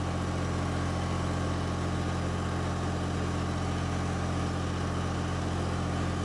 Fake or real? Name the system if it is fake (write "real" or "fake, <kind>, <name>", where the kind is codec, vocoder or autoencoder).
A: real